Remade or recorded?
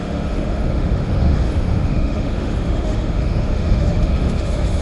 remade